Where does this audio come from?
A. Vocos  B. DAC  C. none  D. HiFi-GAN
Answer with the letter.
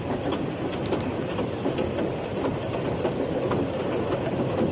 C